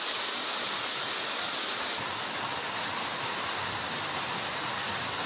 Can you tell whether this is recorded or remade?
recorded